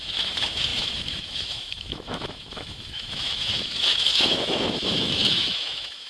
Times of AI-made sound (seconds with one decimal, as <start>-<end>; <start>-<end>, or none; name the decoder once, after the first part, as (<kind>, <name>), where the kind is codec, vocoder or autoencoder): 0.0-6.1 (autoencoder, DAC-VAE)